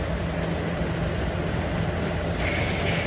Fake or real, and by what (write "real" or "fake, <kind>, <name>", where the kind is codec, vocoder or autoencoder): real